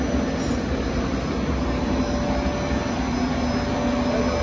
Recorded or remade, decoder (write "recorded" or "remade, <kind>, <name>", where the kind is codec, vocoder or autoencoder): recorded